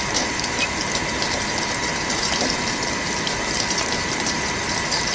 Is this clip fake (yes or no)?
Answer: yes